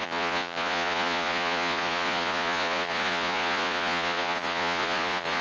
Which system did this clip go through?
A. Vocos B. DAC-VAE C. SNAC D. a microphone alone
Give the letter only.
A